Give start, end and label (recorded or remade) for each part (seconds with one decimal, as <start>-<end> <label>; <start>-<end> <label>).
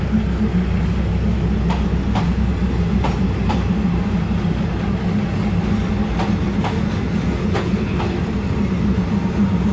0.0-7.4 recorded; 7.4-8.0 remade; 8.0-9.7 recorded